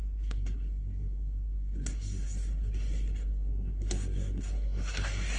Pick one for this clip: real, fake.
fake